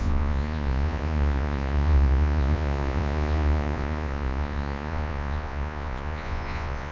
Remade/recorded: remade